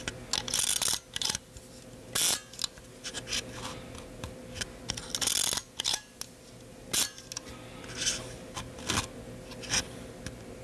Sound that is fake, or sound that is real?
real